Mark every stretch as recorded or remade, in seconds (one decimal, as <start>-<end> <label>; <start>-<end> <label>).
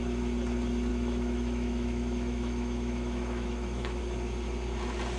0.0-0.9 recorded; 0.9-4.0 remade; 4.0-5.2 recorded